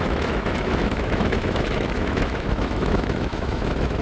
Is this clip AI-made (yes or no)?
yes